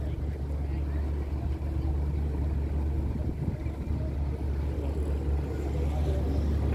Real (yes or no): yes